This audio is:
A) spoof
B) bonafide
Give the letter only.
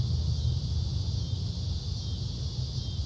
B